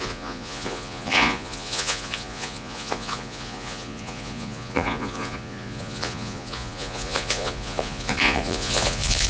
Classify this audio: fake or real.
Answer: fake